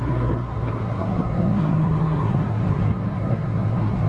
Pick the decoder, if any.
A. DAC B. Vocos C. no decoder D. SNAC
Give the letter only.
D